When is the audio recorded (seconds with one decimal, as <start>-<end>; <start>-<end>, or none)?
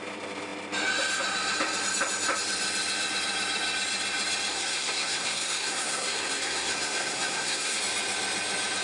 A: 0.0-4.5; 7.8-8.8